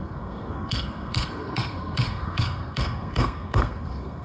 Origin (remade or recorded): remade